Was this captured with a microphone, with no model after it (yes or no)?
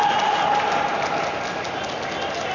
yes